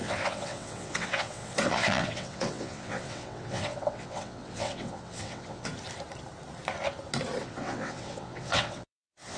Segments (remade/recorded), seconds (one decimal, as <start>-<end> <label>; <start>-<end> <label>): 0.0-5.7 remade; 5.7-7.4 recorded; 7.4-9.4 remade